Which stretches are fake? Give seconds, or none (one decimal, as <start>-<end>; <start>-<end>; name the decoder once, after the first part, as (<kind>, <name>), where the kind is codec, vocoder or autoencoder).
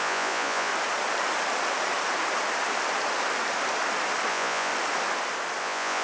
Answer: 0.0-0.7 (vocoder, Vocos); 4.3-4.7; 5.6-6.0